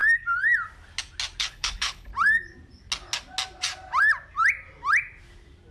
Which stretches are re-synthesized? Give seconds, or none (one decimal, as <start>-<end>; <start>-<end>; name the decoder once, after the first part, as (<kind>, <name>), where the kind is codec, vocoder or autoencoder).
1.4-2.1 (codec, HILCodec)